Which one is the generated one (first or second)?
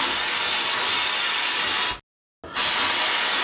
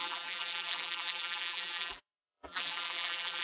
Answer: second